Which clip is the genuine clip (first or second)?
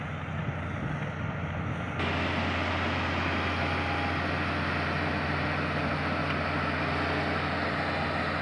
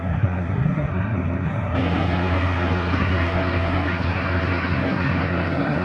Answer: first